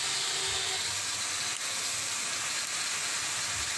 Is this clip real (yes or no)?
yes